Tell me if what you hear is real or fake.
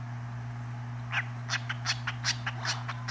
real